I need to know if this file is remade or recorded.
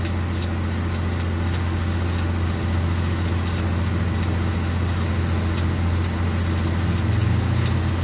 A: recorded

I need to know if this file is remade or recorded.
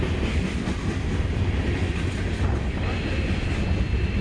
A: recorded